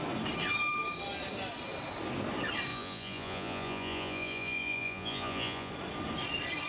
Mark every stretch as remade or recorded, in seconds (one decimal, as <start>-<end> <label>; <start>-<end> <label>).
0.0-2.7 recorded; 2.7-5.7 remade; 5.7-6.7 recorded